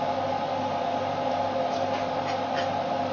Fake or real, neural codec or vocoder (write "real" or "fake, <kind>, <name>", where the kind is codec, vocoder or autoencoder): real